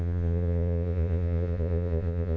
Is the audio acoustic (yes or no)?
no